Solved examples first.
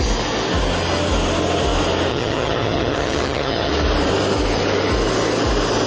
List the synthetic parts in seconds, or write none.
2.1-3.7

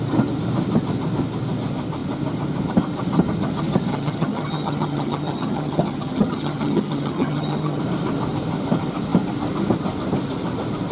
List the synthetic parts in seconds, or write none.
3.9-7.8

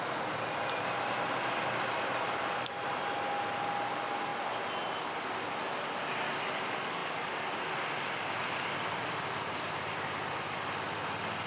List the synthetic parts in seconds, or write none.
none

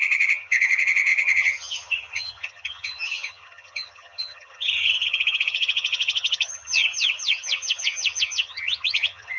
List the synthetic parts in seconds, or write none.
0.0-9.4